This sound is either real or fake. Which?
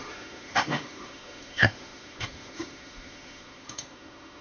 fake